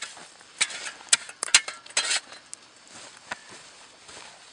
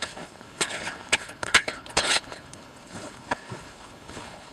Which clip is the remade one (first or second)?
second